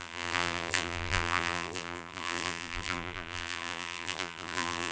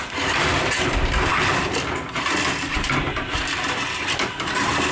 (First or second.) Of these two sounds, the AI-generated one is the first